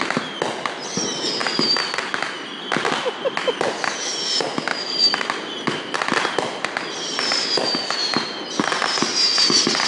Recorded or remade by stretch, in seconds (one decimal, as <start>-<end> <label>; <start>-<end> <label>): 0.0-4.7 recorded; 4.7-8.6 remade; 8.6-9.9 recorded